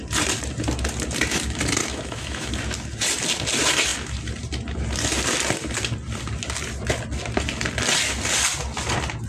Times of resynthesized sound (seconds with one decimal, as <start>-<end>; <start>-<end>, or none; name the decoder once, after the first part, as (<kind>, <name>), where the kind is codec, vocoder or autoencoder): 1.8-2.5 (autoencoder, DAC-VAE)

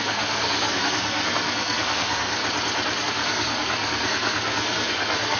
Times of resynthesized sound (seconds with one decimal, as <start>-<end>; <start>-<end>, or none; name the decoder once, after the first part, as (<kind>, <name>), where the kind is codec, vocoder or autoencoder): 0.0-2.4 (codec, SNAC); 3.0-5.4

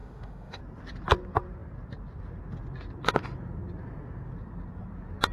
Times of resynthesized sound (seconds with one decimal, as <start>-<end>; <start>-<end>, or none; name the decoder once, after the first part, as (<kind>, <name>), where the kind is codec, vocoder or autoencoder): 0.0-0.6 (autoencoder, DAC-VAE)

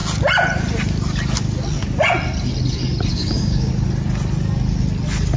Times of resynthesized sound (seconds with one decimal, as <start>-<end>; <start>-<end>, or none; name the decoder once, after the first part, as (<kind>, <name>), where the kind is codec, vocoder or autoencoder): 3.1-3.7 (codec, DAC)

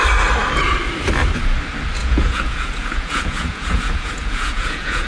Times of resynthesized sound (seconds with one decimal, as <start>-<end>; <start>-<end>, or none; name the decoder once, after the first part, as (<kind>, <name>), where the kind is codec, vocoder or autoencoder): 2.0-5.1 (vocoder, Vocos)

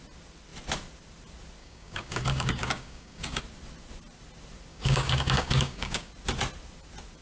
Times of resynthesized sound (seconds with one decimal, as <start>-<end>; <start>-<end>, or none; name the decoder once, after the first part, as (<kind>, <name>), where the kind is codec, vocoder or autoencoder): 1.6-3.4 (codec, DAC); 4.7-6.1